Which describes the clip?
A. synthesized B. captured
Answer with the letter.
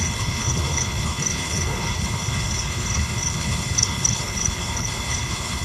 A